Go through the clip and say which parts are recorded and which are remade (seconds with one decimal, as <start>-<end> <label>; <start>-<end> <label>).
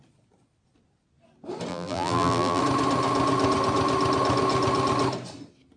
0.0-1.7 recorded; 1.7-2.6 remade; 2.6-5.8 recorded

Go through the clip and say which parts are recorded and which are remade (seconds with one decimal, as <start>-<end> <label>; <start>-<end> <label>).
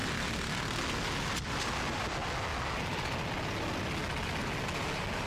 0.0-5.3 recorded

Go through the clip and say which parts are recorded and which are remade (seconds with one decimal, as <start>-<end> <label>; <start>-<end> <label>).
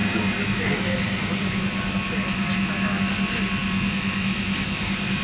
0.0-5.2 recorded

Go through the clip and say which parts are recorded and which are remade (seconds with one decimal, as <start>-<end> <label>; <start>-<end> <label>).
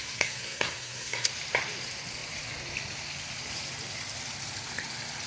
0.0-1.3 remade; 1.3-5.3 recorded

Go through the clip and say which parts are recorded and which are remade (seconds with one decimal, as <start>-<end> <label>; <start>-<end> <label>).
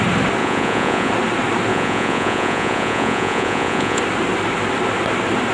0.0-0.4 recorded; 0.4-1.1 remade; 1.1-1.7 recorded; 1.7-4.0 remade; 4.0-5.5 recorded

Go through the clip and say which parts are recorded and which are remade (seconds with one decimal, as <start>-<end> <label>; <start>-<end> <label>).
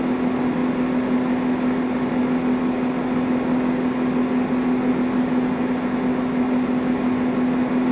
0.0-7.9 recorded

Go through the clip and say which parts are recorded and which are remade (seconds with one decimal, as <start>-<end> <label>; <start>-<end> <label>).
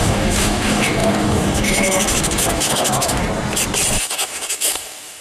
0.0-3.2 remade; 3.2-4.0 recorded; 4.0-5.2 remade